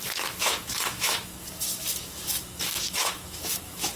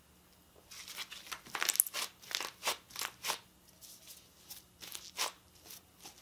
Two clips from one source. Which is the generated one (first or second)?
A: first